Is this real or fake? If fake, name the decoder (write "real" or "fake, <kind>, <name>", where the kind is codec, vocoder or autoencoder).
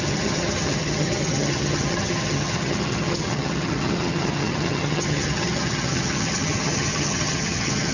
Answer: fake, vocoder, HiFi-GAN